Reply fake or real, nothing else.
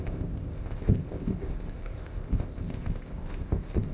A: fake